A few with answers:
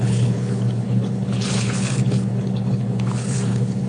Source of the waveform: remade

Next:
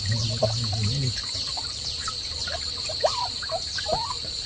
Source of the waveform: remade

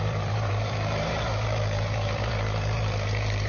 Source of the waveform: remade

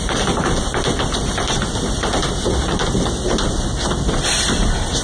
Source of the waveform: recorded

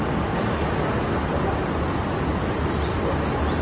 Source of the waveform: recorded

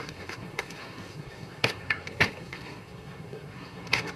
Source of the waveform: remade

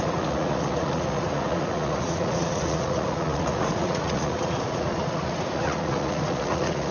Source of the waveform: remade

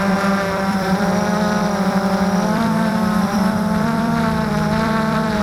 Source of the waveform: remade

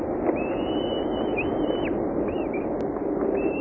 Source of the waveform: recorded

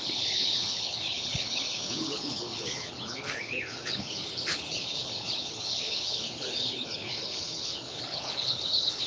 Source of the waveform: remade